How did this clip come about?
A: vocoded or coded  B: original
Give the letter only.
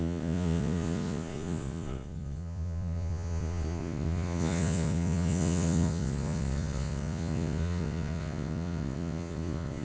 A